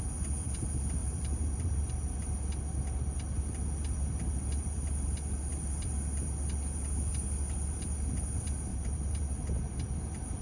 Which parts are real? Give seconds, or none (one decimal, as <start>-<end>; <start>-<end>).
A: 0.0-1.0; 1.9-8.7; 9.3-10.4